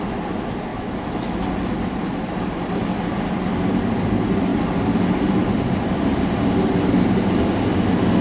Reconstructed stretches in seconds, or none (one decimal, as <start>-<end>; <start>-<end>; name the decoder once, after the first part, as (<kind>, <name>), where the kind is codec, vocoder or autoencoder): 0.7-1.4 (autoencoder, DAC-VAE)